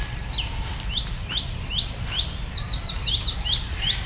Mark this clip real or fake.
real